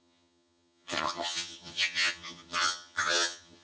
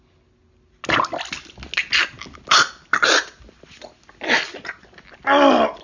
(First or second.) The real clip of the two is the second